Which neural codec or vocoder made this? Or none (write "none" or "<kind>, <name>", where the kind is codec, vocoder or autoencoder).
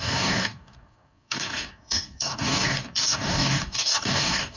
codec, DAC